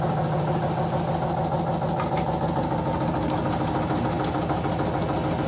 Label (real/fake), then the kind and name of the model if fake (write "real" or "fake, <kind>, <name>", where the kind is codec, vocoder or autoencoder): real